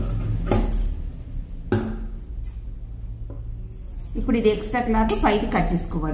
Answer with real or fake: real